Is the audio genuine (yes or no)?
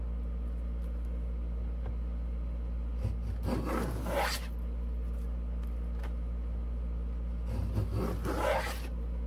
yes